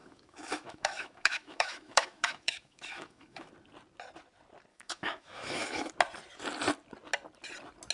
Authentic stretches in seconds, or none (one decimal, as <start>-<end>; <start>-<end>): 3.5-4.7; 5.9-7.9